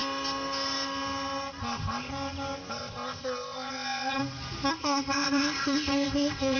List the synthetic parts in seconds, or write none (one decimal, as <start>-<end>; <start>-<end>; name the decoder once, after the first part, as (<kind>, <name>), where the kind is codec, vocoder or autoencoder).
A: 1.6-2.1 (codec, ZipCodec); 2.7-4.2; 4.7-6.6

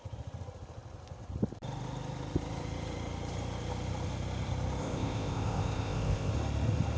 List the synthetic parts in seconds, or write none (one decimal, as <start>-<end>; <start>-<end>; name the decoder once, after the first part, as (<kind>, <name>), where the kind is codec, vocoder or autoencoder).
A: 4.8-6.3 (codec, ZipCodec)

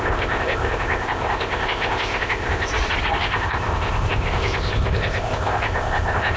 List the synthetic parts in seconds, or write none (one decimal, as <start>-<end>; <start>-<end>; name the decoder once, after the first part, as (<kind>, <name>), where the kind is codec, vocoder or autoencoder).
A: 0.0-2.7 (codec, ZipCodec); 3.2-6.4